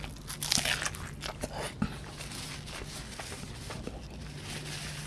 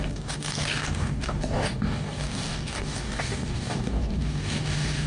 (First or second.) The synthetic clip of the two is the second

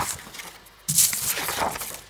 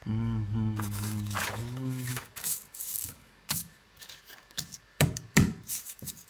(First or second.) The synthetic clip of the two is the second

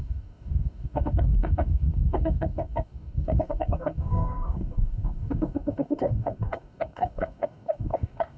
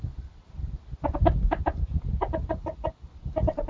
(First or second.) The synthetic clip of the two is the first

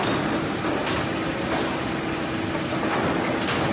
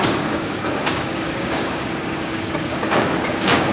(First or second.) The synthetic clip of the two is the second